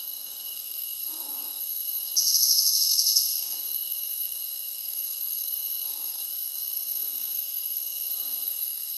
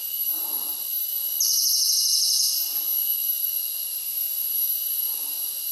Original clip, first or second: second